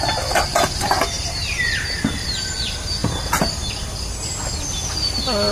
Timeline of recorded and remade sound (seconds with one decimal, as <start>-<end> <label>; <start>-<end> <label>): 0.0-5.5 recorded